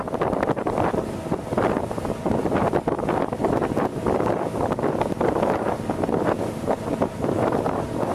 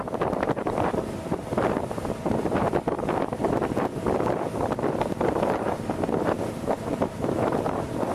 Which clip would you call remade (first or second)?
second